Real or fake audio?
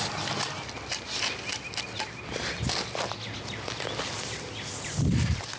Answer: real